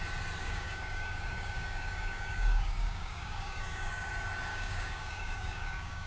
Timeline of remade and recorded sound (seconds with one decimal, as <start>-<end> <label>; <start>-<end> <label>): 0.0-0.4 recorded; 0.4-4.1 remade; 4.1-4.5 recorded; 4.5-6.1 remade